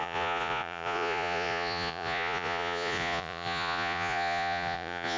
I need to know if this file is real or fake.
fake